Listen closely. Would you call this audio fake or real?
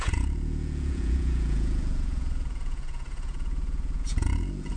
fake